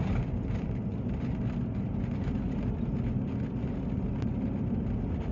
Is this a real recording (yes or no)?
yes